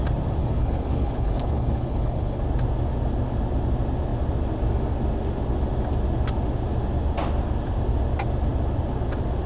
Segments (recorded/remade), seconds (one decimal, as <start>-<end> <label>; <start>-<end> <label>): 0.0-0.4 recorded; 0.4-2.4 remade; 2.4-9.5 recorded